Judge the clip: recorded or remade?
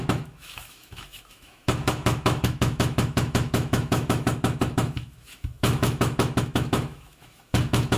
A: remade